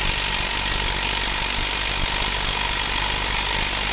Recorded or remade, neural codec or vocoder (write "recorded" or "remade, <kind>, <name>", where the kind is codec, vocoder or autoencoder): recorded